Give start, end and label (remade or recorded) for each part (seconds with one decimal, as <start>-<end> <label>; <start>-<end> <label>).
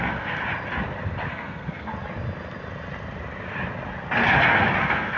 0.0-0.4 remade; 0.4-1.3 recorded; 1.3-1.9 remade; 1.9-4.8 recorded; 4.8-5.2 remade